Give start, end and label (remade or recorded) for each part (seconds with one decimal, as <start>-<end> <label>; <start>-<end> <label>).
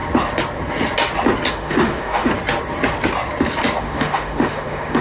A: 0.0-1.5 recorded; 1.5-2.3 remade; 2.3-3.8 recorded; 3.8-5.0 remade